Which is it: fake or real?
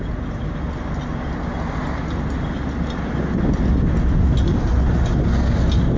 real